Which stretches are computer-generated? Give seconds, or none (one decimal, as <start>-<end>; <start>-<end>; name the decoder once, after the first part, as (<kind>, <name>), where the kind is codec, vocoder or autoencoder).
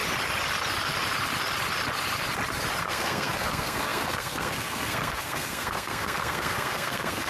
2.8-7.3 (codec, SNAC)